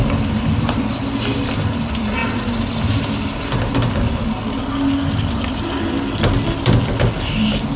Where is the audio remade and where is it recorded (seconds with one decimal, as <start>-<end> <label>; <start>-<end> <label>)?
0.0-7.8 recorded

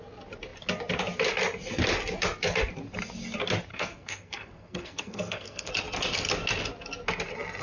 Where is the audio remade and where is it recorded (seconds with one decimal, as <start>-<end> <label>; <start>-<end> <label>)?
0.0-3.7 recorded; 3.7-5.7 remade; 5.7-7.6 recorded

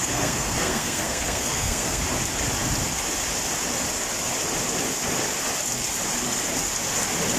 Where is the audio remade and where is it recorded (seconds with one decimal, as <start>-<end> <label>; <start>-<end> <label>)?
0.0-2.0 remade; 2.0-7.4 recorded

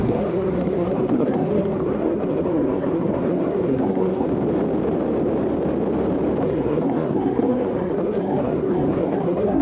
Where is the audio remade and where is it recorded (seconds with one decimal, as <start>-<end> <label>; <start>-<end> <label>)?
0.0-4.3 remade; 4.3-6.4 recorded; 6.4-9.6 remade